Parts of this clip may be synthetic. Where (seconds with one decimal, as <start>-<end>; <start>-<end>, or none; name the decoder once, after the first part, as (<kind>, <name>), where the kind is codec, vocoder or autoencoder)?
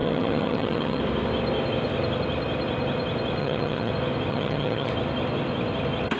0.0-1.0 (vocoder, HiFi-GAN); 3.4-3.9; 4.3-4.9